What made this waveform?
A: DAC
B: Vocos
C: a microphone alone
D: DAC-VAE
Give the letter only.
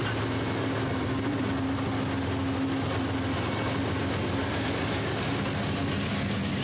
C